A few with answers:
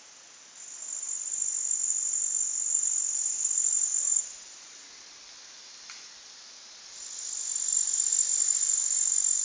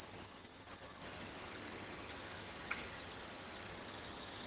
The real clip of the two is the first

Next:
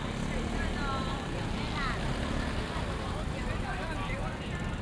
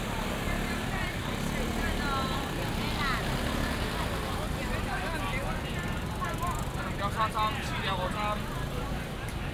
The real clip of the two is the second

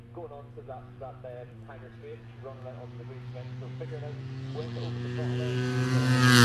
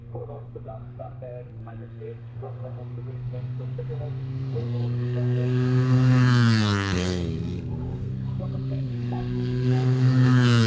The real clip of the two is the first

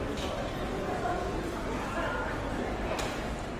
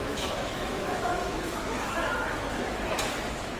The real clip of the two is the first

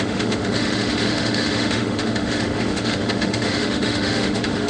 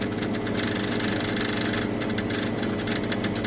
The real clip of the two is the second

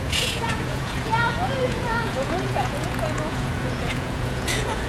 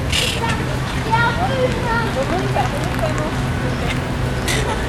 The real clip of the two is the second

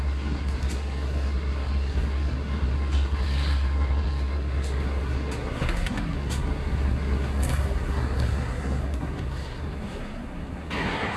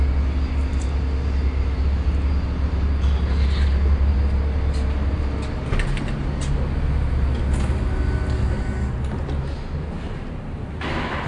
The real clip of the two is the second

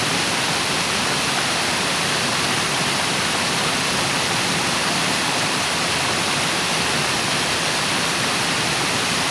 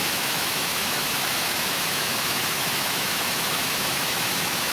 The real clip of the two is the first